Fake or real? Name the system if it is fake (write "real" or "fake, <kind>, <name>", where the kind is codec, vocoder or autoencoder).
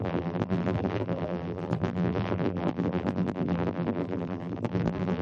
fake, vocoder, BigVGAN v2